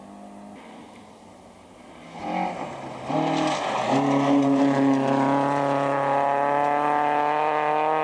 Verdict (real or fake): real